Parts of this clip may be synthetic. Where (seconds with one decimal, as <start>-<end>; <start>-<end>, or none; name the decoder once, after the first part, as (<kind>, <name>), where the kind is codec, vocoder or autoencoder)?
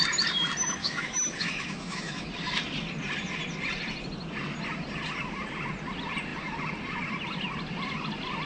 0.8-2.3 (autoencoder, DAC-VAE)